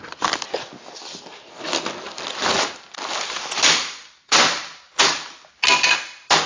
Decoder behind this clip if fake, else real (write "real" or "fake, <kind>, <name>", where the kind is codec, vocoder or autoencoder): real